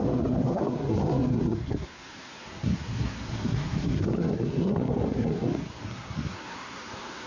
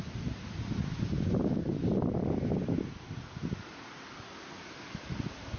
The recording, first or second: second